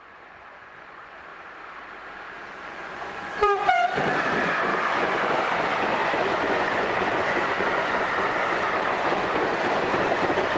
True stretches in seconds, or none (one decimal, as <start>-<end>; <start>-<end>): 1.3-2.6